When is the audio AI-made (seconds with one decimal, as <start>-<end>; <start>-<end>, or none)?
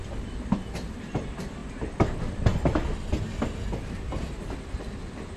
none